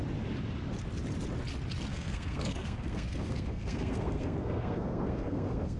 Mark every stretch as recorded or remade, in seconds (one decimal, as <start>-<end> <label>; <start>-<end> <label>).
0.0-1.9 recorded; 1.9-5.8 remade